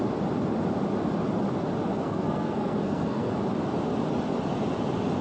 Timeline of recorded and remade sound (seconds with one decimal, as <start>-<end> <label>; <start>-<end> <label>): 0.0-1.9 recorded; 1.9-3.3 remade; 3.3-5.2 recorded